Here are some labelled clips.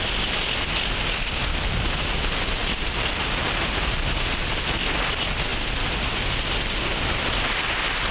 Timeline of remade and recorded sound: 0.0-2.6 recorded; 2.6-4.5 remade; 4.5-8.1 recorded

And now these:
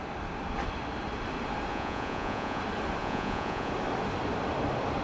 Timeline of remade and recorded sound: 0.0-1.7 recorded; 1.7-2.6 remade; 2.6-3.0 recorded; 3.0-3.7 remade; 3.7-5.0 recorded

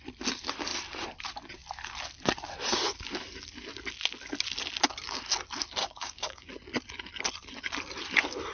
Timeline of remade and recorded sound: 0.0-5.8 recorded; 5.8-6.5 remade; 6.5-8.5 recorded